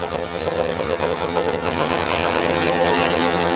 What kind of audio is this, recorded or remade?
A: remade